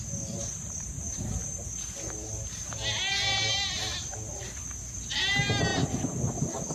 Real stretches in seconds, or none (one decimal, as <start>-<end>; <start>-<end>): 0.0-6.7